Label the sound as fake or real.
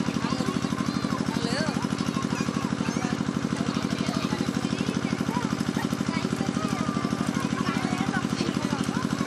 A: real